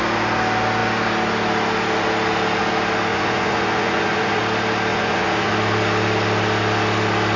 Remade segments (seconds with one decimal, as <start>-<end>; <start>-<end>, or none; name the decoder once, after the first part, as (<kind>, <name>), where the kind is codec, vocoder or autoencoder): 3.1-4.4 (vocoder, Vocos); 4.9-5.5

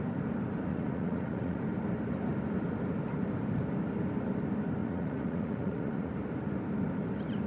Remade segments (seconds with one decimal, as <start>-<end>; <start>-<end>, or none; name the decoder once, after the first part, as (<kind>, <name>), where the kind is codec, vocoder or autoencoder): 0.7-1.6 (vocoder, Vocos); 4.8-6.1

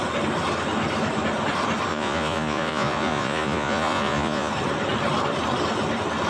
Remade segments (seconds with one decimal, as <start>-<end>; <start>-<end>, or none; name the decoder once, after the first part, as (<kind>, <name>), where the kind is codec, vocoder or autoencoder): 1.9-4.5 (vocoder, Vocos)

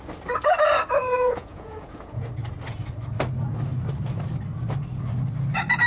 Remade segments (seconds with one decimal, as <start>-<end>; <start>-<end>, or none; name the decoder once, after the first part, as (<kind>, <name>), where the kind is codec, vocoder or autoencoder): 1.0-2.3 (vocoder, Vocos)

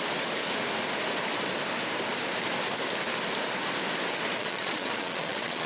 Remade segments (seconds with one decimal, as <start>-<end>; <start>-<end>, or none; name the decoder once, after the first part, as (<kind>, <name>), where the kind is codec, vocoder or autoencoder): 4.4-5.7 (vocoder, Vocos)

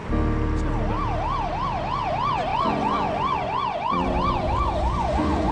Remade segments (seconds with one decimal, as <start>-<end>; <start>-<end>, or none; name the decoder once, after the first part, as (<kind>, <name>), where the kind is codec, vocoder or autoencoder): 2.5-5.5 (vocoder, Vocos)

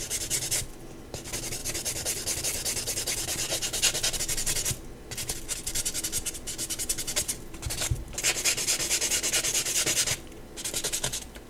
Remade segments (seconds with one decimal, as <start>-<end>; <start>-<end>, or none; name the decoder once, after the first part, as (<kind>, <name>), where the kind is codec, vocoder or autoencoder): none

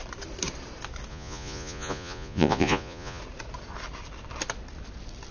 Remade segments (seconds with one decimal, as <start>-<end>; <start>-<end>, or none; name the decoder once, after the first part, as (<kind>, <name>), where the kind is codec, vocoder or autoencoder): 1.1-3.2 (vocoder, Vocos)